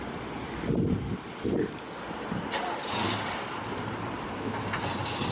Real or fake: real